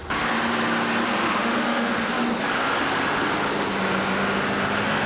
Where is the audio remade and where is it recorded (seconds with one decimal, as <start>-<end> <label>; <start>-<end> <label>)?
0.0-1.2 recorded; 1.2-1.9 remade; 1.9-5.1 recorded